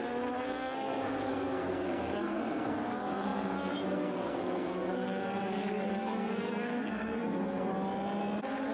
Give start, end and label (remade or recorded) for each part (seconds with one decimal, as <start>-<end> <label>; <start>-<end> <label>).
0.0-7.7 remade; 7.7-8.7 recorded